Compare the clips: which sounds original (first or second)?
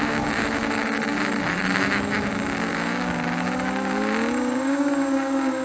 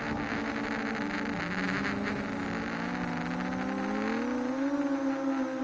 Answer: second